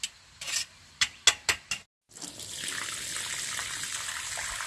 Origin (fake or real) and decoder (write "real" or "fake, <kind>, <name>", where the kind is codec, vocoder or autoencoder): real